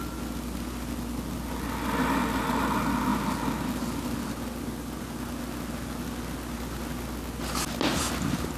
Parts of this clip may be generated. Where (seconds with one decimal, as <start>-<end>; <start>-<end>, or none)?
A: none

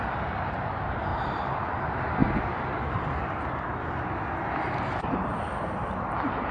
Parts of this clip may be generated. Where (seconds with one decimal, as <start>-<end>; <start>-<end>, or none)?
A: none

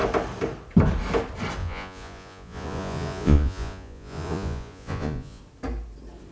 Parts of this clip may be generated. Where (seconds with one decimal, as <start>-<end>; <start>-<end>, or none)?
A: 1.6-5.4

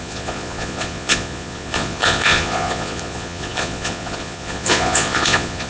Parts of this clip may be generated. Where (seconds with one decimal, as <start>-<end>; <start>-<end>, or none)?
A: 0.0-5.7